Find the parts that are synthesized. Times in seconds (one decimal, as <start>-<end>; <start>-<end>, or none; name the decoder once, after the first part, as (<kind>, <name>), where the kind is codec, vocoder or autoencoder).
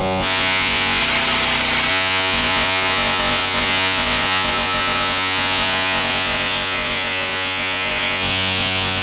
0.0-1.0 (vocoder, Vocos); 1.9-9.0